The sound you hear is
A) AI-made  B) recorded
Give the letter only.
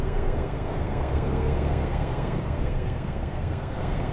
A